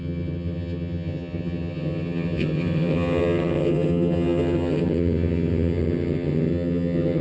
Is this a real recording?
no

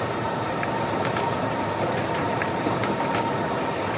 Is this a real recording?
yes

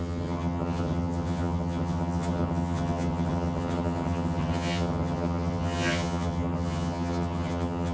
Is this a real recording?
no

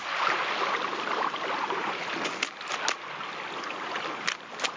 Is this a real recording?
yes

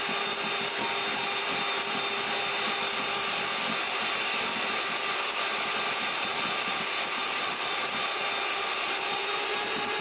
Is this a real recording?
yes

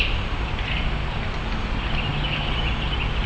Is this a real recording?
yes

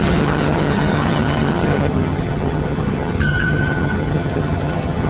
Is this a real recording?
no